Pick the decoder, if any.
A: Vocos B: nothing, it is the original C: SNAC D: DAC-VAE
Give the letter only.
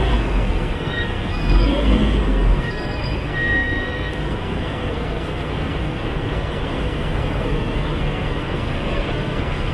C